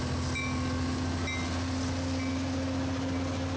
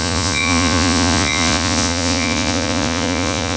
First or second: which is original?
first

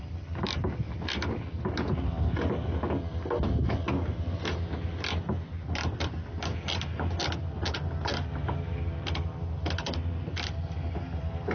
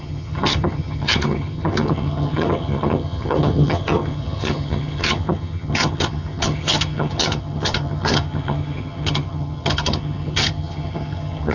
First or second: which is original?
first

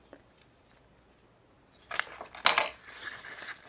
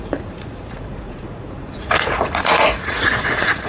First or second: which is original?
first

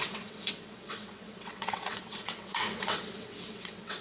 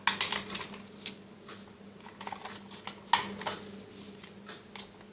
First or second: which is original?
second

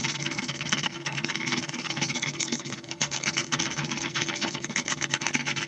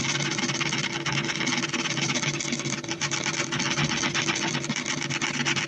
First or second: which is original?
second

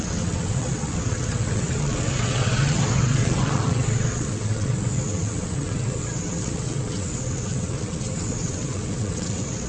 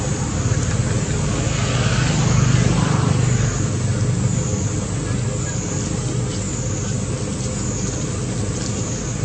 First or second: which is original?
second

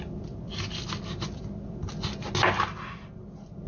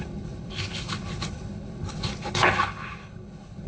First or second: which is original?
first